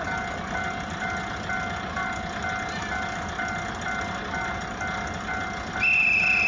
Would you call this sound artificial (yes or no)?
no